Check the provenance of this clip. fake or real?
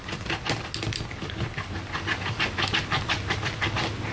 real